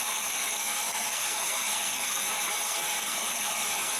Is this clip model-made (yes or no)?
yes